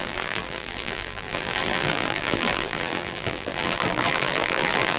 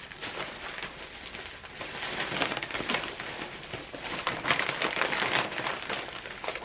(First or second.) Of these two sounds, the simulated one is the first